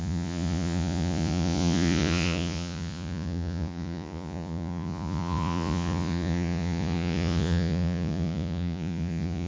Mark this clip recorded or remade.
remade